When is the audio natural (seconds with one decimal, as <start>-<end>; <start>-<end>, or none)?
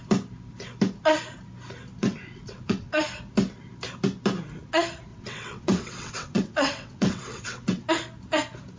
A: 0.0-2.0; 3.0-5.1; 7.9-8.8